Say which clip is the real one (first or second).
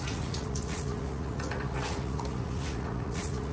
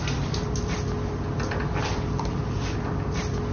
second